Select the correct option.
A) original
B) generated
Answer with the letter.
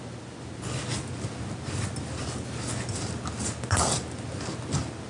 A